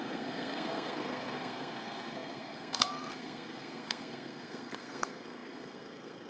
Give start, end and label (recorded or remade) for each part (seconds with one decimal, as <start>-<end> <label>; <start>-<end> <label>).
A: 0.0-6.3 remade